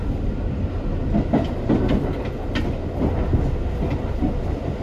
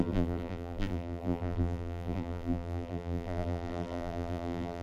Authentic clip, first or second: first